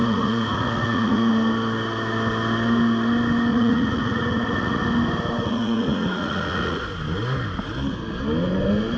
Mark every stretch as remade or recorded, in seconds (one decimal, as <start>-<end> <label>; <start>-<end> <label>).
0.0-1.3 remade; 1.3-3.5 recorded; 3.5-4.8 remade; 4.8-5.4 recorded; 5.4-6.8 remade; 6.8-9.0 recorded